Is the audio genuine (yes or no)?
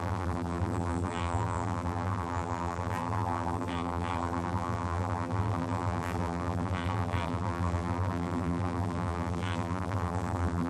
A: no